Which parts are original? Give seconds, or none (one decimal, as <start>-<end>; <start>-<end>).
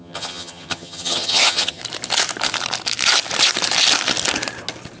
1.8-5.0